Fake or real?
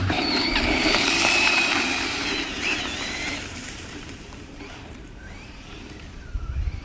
fake